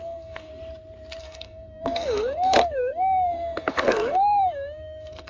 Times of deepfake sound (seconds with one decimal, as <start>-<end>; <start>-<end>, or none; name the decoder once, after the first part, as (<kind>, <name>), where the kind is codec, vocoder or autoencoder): 0.0-0.5 (codec, SNAC); 1.2-5.3